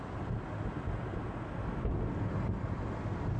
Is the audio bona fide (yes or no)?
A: yes